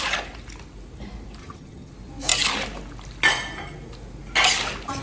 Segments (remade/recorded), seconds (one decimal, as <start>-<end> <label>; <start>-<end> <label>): 0.0-1.4 recorded; 1.4-1.9 remade; 1.9-5.0 recorded